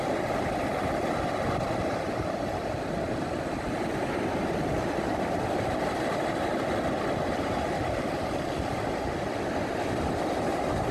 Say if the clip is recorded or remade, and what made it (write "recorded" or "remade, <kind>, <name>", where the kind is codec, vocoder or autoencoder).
recorded